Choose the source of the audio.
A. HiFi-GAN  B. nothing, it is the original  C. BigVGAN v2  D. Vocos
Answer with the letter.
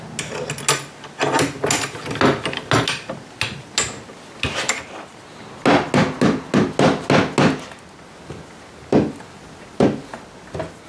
B